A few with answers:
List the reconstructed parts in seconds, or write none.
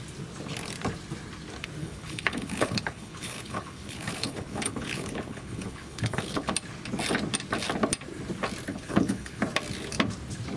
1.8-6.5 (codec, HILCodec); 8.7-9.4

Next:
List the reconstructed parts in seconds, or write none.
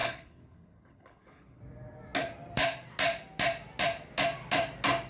0.0-1.6 (codec, HILCodec)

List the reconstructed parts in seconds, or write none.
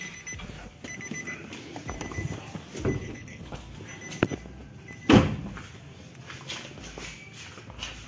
3.0-3.6 (codec, HILCodec)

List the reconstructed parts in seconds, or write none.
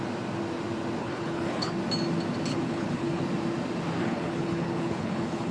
1.0-1.7 (codec, HILCodec); 2.5-3.2; 4.0-5.5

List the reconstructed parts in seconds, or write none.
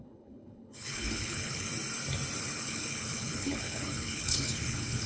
0.0-1.7 (codec, HILCodec); 2.4-5.1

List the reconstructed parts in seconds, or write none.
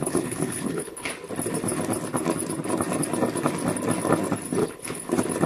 0.0-1.1 (codec, HILCodec); 4.6-5.1